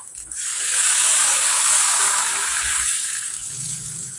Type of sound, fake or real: fake